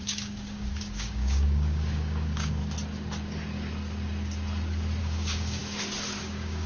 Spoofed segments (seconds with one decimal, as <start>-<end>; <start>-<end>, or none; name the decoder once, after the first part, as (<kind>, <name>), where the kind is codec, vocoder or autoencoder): 0.0-2.6 (codec, DAC); 5.0-5.6; 6.2-6.7